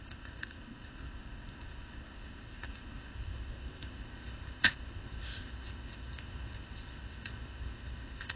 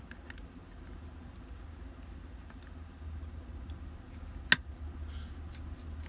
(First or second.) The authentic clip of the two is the second